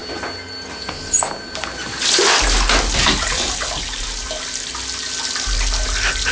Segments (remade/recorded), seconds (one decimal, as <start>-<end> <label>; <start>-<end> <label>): 0.0-6.3 recorded